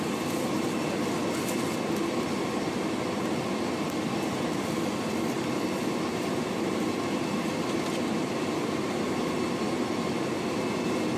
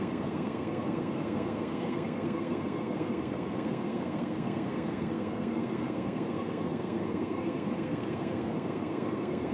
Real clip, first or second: first